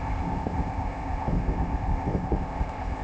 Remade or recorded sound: remade